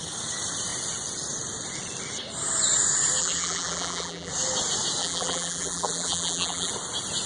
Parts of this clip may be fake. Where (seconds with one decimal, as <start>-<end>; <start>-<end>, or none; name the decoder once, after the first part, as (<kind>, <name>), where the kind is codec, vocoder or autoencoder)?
3.2-4.3 (vocoder, BigVGAN v2); 5.0-6.7